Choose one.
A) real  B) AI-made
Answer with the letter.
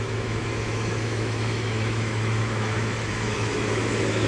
B